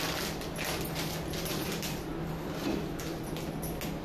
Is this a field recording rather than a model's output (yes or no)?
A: yes